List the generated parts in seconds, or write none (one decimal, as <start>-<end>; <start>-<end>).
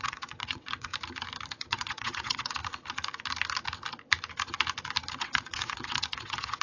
0.0-0.9; 1.5-2.6; 5.2-6.6